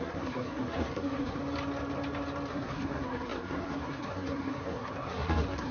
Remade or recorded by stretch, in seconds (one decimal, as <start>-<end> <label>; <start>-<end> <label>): 0.0-1.4 remade; 1.4-2.5 recorded; 2.5-5.7 remade